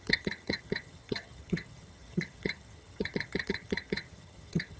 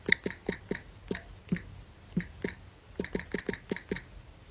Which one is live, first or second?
second